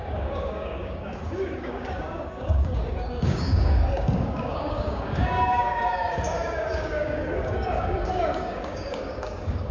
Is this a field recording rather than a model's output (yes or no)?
no